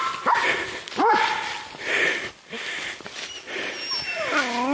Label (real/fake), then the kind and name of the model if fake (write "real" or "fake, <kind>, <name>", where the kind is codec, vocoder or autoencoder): real